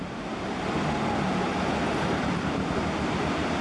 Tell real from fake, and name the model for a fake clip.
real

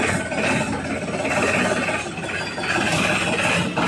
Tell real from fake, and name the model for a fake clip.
real